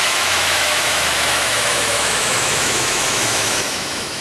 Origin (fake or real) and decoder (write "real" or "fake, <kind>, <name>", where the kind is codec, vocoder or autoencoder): fake, autoencoder, DAC-VAE